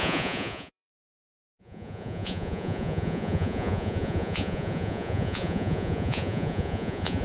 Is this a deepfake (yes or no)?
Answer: yes